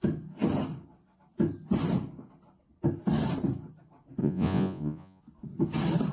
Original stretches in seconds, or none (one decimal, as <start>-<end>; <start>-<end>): 0.0-4.2; 5.2-6.1